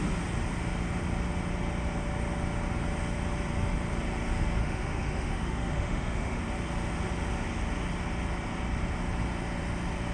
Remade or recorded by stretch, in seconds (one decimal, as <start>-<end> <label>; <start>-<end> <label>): 0.0-4.6 recorded; 4.6-6.4 remade; 6.4-10.1 recorded